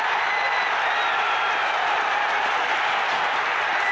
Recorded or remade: recorded